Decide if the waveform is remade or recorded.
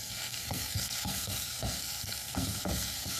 remade